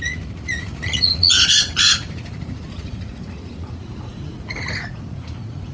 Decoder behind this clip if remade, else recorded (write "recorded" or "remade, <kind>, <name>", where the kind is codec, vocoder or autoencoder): remade, vocoder, Vocos